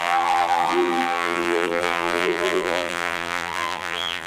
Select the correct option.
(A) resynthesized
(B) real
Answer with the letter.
A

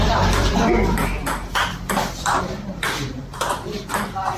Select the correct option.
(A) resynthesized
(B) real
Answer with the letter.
A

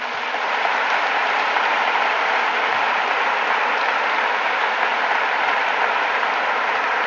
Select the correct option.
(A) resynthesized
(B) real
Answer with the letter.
A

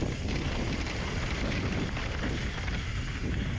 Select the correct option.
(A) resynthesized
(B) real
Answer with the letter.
B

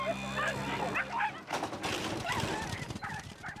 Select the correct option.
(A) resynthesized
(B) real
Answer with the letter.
B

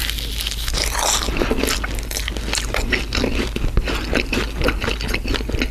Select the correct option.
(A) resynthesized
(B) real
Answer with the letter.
B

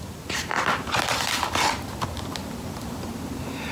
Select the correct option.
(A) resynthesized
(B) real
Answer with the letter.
A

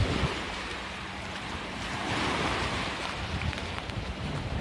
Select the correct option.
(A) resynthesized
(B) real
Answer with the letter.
A